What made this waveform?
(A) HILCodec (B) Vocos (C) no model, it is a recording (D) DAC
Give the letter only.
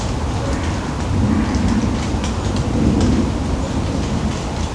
C